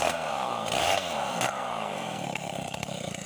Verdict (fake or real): fake